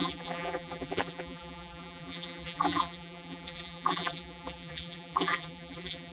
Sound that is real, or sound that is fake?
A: fake